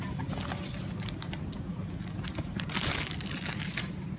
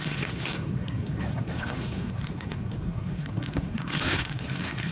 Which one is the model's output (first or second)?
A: second